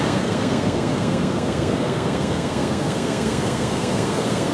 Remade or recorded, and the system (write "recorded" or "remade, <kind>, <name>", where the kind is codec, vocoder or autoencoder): remade, codec, SNAC